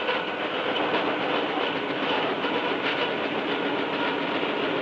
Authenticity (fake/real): real